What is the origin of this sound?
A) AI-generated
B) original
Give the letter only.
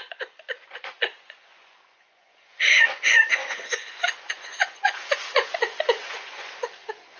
A